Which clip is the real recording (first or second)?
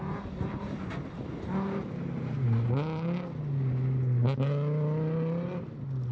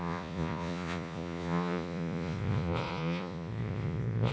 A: first